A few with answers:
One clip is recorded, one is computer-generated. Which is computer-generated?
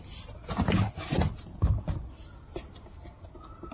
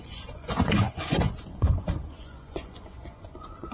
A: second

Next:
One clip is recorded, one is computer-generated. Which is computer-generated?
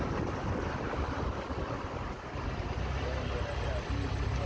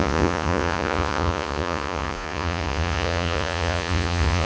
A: second